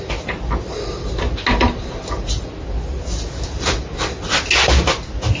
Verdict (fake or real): real